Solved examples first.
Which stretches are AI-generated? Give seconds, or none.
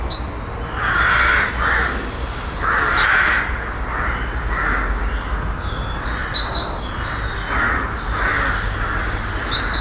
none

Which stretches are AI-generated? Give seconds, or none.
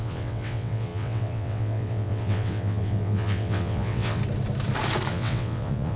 0.0-4.2 (vocoder, WaveNeXt); 5.1-6.0